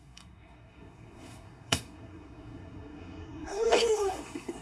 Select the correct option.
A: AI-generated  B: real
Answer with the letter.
A